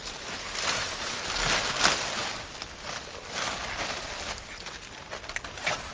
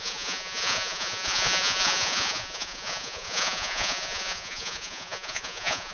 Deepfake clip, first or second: second